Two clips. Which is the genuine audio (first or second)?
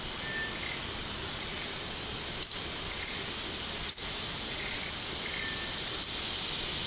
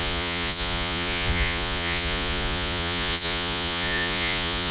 first